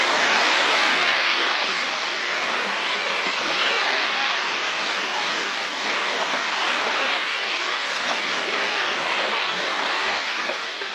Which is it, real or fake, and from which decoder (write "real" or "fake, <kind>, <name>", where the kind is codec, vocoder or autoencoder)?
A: fake, codec, DAC